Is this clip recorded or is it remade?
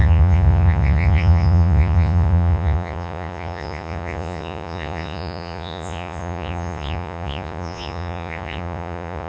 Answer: remade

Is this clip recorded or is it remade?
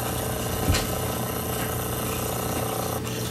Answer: recorded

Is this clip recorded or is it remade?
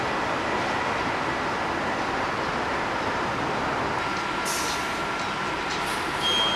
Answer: recorded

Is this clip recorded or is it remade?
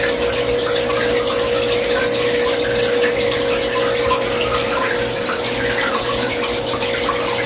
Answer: recorded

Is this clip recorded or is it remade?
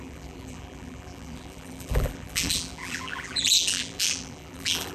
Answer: remade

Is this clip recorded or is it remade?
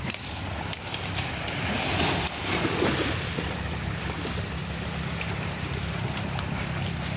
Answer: recorded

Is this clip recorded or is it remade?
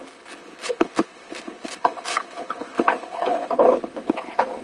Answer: remade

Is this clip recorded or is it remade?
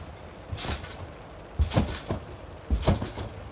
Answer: recorded